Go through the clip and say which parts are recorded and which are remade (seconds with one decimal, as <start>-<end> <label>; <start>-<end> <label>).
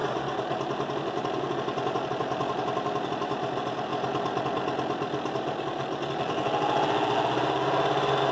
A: 0.0-8.3 recorded